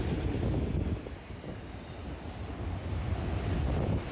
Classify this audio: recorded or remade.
recorded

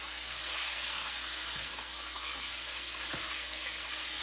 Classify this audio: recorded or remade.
remade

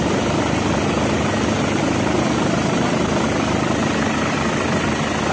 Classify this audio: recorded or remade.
recorded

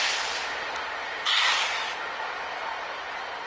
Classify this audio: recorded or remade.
recorded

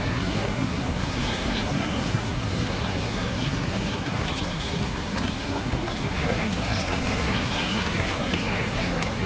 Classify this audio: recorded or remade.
remade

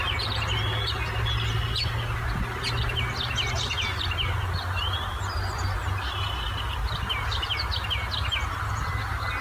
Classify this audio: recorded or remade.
recorded